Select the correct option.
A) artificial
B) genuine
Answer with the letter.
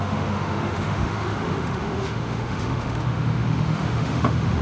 A